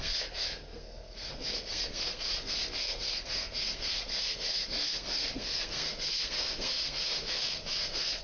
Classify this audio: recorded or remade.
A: remade